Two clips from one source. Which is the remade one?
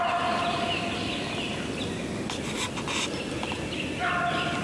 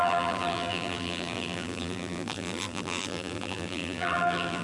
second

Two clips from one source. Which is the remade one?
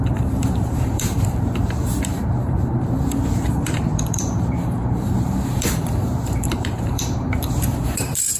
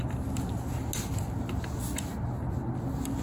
first